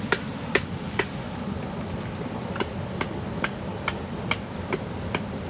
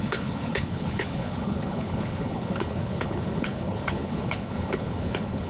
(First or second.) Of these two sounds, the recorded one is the first